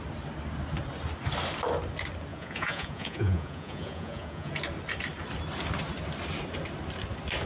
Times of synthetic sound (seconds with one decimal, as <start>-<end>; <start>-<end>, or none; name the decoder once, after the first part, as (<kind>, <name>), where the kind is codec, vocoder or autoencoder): 2.3-4.5 (vocoder, Vocos)